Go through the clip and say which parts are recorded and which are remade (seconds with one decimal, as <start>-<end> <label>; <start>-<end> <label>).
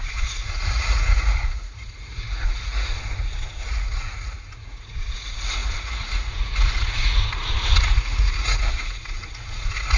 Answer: 0.0-10.0 remade